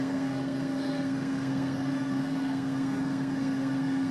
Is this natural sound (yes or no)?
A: no